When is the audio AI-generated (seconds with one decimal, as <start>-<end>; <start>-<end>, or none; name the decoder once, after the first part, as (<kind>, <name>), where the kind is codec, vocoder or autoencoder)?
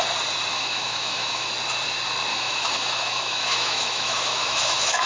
0.5-1.5 (autoencoder, DAC-VAE); 2.3-5.1